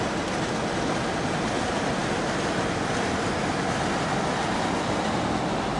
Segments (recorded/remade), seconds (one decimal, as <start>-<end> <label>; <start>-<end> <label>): 0.0-5.8 recorded